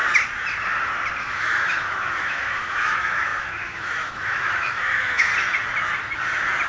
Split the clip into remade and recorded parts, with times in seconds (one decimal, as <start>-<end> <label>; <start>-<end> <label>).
0.0-1.2 recorded; 1.2-5.3 remade; 5.3-6.7 recorded